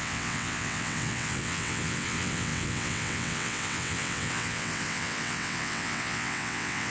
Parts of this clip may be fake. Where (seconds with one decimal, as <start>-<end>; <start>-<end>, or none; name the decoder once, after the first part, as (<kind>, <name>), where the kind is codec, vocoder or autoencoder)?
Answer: 0.0-6.9 (vocoder, WaveNeXt)